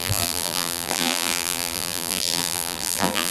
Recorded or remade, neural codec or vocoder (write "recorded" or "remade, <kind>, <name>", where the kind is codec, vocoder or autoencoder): remade, vocoder, BigVGAN v2